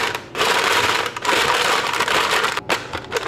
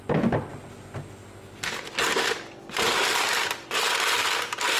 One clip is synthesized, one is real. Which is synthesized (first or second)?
first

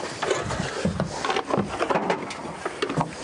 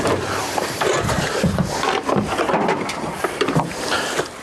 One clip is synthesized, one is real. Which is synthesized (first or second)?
second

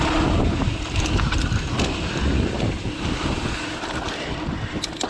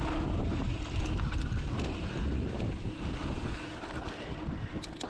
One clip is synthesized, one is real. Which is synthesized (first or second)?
first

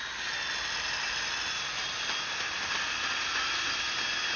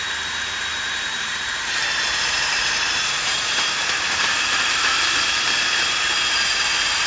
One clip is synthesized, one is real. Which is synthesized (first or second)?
second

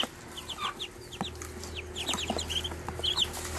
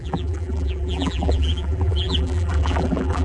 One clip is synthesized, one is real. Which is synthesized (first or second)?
second